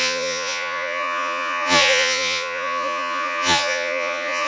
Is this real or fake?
fake